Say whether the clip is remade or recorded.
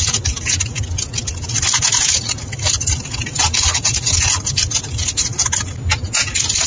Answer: recorded